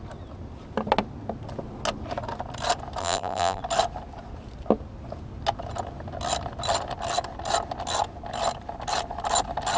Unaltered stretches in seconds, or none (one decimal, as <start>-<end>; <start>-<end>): 0.0-3.0; 3.6-9.8